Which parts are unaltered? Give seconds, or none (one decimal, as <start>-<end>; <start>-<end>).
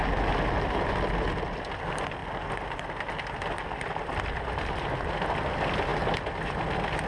0.0-7.1